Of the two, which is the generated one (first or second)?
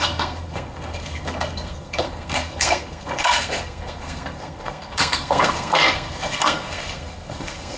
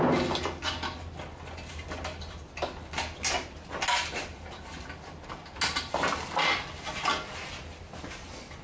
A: first